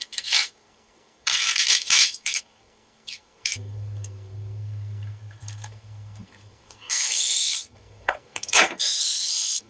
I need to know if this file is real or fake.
fake